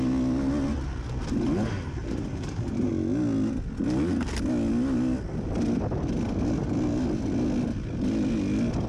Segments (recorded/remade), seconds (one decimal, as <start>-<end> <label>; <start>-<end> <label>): 0.0-2.0 recorded; 2.0-2.9 remade; 2.9-8.9 recorded